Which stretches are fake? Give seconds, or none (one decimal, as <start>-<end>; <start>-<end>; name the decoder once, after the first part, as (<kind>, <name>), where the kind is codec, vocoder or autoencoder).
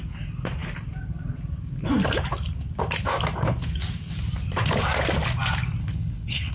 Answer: 5.8-6.5 (codec, HILCodec)